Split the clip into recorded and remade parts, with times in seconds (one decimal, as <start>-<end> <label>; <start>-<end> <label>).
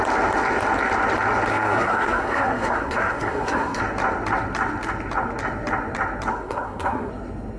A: 0.0-1.5 recorded; 1.5-3.8 remade; 3.8-6.3 recorded; 6.3-7.1 remade; 7.1-7.6 recorded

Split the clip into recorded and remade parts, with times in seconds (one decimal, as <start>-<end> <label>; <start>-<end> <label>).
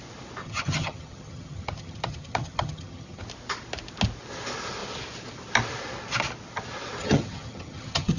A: 0.0-0.4 recorded; 0.4-3.2 remade; 3.2-7.0 recorded; 7.0-8.2 remade